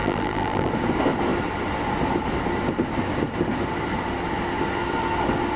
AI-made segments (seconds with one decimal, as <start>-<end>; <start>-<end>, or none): 0.0-0.7